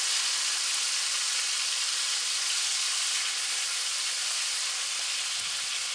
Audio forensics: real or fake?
real